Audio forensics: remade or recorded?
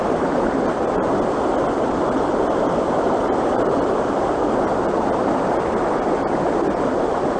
recorded